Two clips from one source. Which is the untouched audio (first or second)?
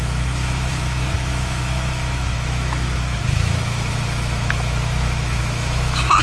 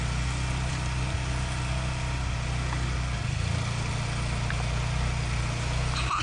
second